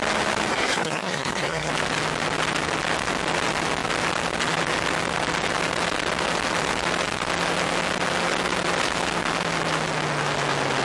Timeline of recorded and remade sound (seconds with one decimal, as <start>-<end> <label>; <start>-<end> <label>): 0.0-0.5 recorded; 0.5-1.7 remade; 1.7-10.8 recorded